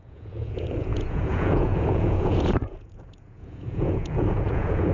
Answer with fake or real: fake